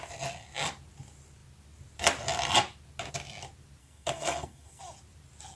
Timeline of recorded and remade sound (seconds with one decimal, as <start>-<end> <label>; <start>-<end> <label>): 0.0-3.8 recorded; 3.8-4.8 remade; 4.8-5.6 recorded